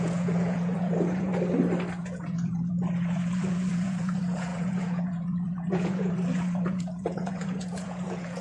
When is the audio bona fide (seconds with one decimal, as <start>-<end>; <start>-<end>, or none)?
1.3-2.0

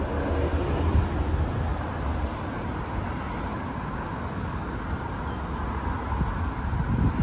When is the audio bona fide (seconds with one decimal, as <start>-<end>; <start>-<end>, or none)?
0.0-7.2

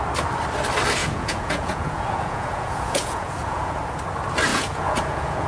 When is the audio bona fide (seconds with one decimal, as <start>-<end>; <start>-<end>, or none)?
0.0-1.0; 3.8-4.5

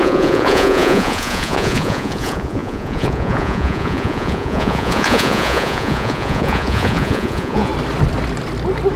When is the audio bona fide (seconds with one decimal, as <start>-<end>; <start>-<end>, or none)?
7.7-9.0

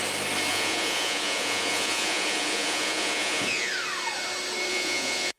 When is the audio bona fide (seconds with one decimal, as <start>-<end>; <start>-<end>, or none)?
0.0-0.5; 3.7-4.7